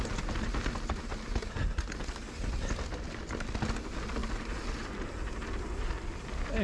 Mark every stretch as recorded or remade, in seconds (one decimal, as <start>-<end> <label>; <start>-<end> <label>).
0.0-6.6 recorded